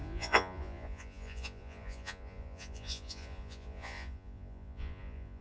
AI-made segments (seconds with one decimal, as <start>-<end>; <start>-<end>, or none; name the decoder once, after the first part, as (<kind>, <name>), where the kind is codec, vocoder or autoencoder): 0.0-5.4 (vocoder, Vocos)